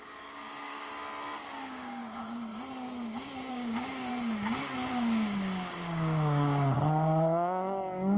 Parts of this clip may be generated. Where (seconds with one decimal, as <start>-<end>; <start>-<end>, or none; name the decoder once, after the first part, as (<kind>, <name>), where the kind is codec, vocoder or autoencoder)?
0.0-0.9 (codec, DAC); 1.4-2.5; 3.5-4.1; 4.9-8.2